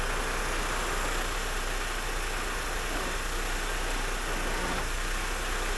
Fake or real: real